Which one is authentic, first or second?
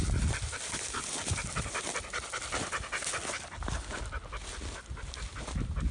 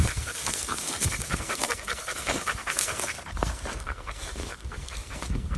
first